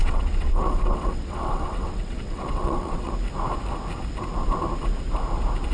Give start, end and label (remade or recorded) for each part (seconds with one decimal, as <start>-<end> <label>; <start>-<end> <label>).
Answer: 0.0-3.1 remade; 3.1-5.7 recorded